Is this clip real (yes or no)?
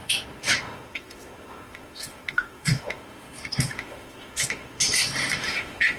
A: no